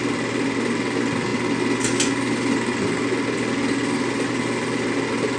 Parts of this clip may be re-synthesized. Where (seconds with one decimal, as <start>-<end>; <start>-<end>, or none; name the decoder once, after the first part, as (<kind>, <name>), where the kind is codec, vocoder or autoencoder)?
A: none